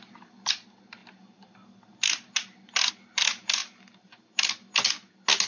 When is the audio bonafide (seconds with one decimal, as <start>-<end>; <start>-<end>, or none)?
0.0-5.5